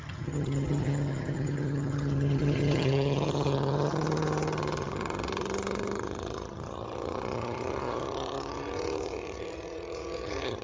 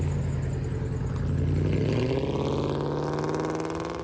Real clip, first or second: second